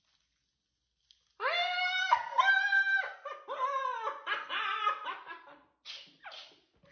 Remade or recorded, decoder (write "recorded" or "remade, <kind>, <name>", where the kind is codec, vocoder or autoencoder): recorded